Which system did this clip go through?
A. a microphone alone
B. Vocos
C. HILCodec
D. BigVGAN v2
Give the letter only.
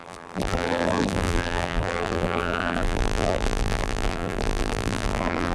D